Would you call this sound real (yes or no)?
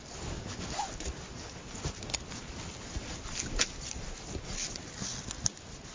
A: yes